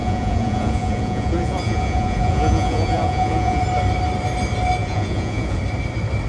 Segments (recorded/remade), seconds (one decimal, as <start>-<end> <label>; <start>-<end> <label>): 0.0-3.6 remade; 3.6-4.8 recorded; 4.8-5.6 remade; 5.6-6.3 recorded